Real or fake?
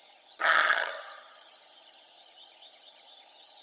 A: fake